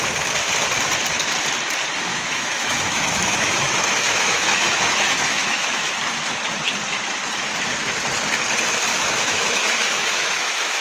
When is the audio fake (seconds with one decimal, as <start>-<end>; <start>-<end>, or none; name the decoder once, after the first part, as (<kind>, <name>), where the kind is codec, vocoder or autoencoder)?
2.1-5.9 (autoencoder, DAC-VAE); 8.9-10.8